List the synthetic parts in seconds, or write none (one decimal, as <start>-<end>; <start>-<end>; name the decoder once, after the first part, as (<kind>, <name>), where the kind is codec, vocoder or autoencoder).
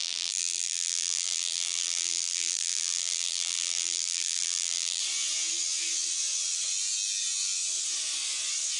0.0-5.0 (vocoder, BigVGAN v2)